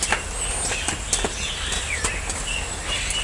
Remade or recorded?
recorded